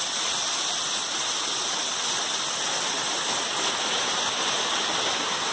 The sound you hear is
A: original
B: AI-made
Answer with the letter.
A